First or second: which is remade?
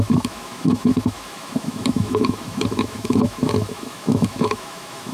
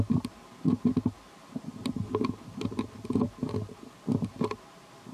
first